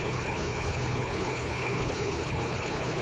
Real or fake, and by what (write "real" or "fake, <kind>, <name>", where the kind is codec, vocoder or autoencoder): fake, codec, HILCodec